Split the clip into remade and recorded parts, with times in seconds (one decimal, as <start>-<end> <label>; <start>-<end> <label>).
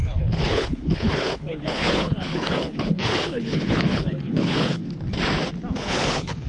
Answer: 0.0-4.8 remade; 4.8-5.8 recorded; 5.8-6.5 remade